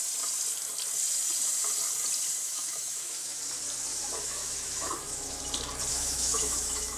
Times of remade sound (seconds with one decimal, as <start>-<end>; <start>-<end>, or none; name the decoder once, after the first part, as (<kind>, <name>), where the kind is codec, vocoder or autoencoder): 2.4-3.4 (autoencoder, DAC-VAE); 3.9-5.4; 5.9-7.0